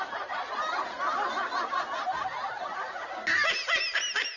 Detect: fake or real real